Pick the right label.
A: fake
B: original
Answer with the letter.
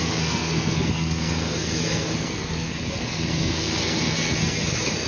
A